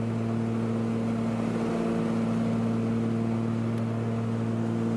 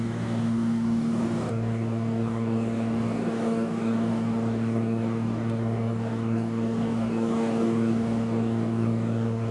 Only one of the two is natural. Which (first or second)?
first